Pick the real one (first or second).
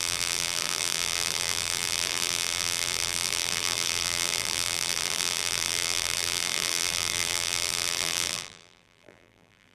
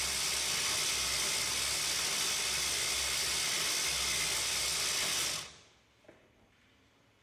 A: second